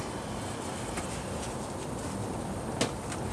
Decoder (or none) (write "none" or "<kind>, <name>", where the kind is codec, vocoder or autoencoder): none